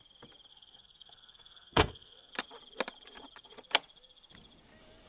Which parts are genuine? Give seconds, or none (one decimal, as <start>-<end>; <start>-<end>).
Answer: 0.0-0.5; 2.3-5.1